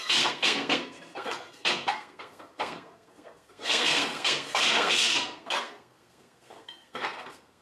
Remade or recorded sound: remade